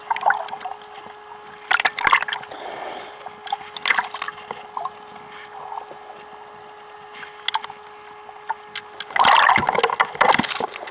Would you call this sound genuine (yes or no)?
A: yes